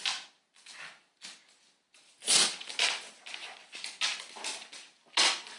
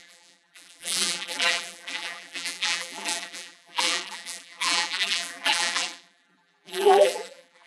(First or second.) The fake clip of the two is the second